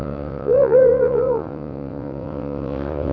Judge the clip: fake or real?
fake